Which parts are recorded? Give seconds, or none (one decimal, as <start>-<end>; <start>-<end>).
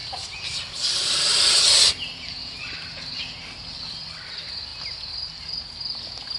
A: 0.0-6.4